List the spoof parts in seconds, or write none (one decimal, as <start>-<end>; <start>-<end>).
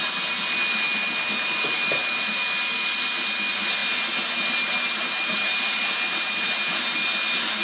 none